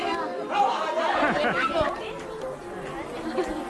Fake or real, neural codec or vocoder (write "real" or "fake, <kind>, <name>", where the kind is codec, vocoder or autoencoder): real